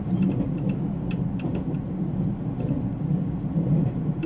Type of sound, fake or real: real